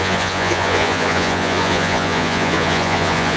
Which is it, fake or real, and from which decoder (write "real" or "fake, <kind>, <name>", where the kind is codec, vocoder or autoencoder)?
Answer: fake, vocoder, Vocos